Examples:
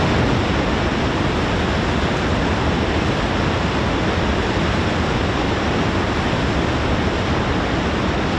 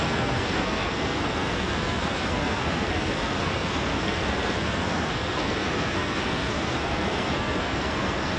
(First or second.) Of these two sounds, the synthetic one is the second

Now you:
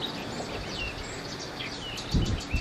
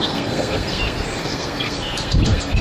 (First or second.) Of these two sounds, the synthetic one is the second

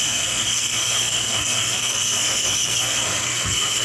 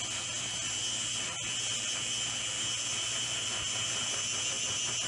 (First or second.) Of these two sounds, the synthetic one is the first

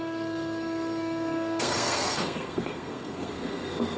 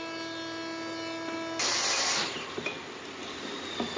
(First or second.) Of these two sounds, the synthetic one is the first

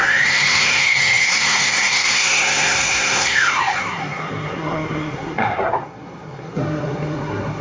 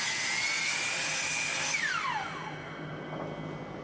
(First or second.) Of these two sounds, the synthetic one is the first